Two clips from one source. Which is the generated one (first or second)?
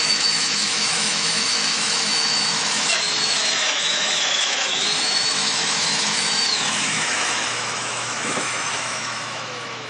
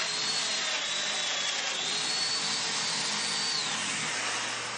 first